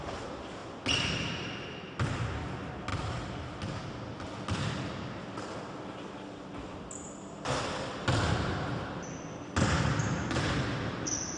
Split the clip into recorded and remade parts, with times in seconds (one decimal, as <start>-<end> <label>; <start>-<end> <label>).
0.0-11.4 recorded